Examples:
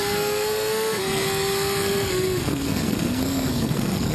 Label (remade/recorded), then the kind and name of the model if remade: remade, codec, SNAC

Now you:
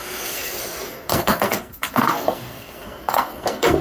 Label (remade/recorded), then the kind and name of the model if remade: remade, codec, SNAC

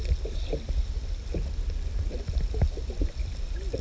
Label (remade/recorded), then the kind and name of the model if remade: recorded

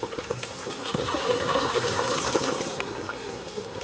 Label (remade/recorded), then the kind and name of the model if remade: remade, codec, SNAC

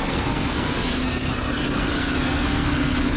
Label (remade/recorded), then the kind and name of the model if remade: remade, codec, SNAC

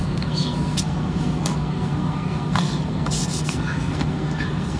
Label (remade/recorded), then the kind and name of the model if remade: remade, codec, SNAC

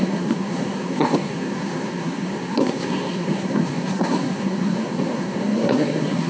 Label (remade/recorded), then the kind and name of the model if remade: remade, codec, SNAC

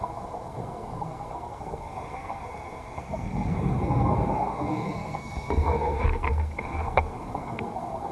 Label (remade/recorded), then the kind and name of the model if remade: remade, codec, SNAC